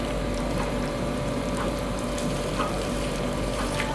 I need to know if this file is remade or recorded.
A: remade